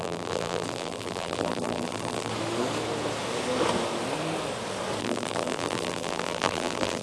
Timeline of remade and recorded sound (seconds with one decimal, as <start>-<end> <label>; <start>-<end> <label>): 0.0-2.3 remade; 2.3-5.0 recorded; 5.0-7.0 remade